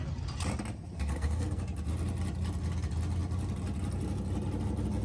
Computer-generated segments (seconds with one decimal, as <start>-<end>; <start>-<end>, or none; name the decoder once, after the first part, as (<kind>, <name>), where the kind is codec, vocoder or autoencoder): 0.9-1.6 (codec, SNAC)